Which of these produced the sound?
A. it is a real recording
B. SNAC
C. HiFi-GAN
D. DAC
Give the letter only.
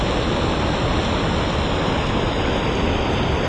A